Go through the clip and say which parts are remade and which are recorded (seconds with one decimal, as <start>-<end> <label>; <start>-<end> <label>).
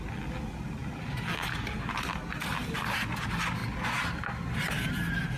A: 0.0-5.4 recorded